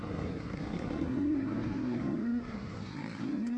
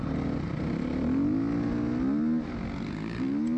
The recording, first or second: second